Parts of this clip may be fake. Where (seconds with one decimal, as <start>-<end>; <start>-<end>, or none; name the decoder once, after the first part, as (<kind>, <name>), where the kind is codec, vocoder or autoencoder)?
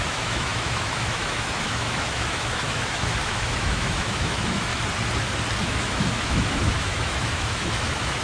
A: 0.0-4.7 (autoencoder, DAC-VAE); 5.6-8.2